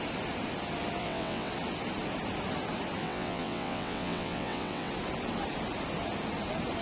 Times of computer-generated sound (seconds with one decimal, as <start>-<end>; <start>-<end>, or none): 1.0-1.5; 3.0-4.9